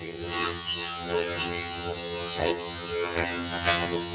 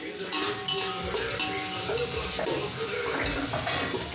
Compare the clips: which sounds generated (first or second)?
first